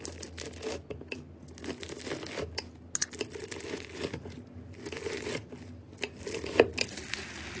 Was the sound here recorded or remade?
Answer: recorded